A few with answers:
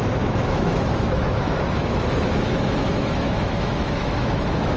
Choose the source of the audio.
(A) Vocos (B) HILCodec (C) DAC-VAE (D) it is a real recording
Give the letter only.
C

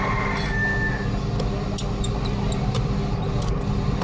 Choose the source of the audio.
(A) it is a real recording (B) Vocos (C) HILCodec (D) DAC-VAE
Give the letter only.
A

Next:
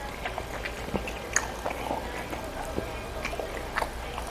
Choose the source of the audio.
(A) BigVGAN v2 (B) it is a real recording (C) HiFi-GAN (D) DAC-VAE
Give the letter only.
B